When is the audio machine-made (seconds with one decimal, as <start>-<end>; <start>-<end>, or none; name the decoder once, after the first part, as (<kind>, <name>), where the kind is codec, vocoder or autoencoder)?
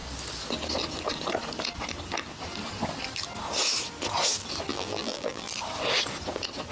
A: 4.7-5.5 (vocoder, BigVGAN v2)